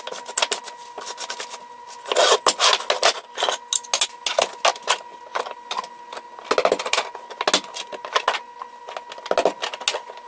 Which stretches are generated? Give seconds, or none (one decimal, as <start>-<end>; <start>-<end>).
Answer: none